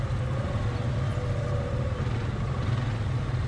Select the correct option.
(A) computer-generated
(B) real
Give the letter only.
B